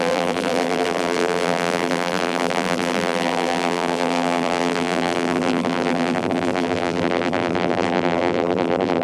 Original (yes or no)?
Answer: no